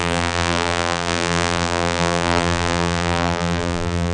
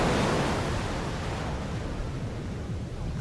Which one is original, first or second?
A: second